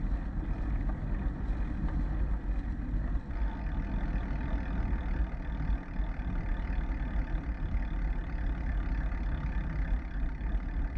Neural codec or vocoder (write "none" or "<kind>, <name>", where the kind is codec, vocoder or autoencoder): none